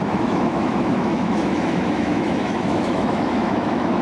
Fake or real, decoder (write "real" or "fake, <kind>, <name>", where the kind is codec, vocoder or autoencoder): fake, autoencoder, DAC-VAE